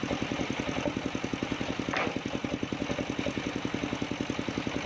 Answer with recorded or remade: recorded